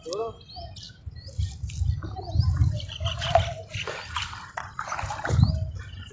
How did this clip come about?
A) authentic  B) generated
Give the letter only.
A